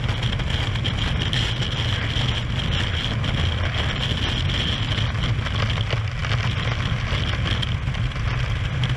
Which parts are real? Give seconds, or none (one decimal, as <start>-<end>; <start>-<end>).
0.0-9.0